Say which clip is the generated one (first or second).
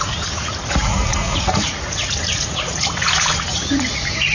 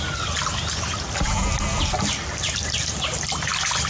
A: first